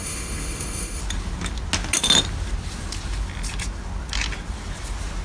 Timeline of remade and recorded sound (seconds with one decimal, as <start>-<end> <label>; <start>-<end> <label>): 0.0-1.0 remade; 1.0-5.2 recorded